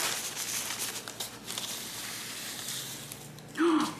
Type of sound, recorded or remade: recorded